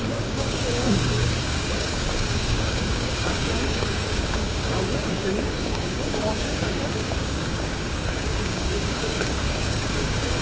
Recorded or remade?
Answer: remade